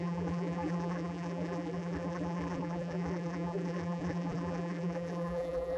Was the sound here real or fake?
fake